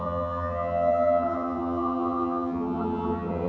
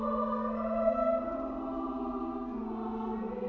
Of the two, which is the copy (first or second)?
first